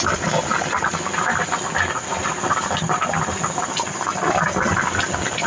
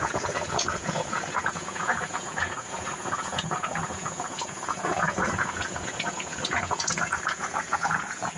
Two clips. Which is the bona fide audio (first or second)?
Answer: first